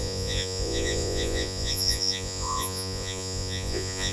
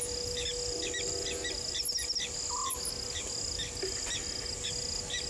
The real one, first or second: second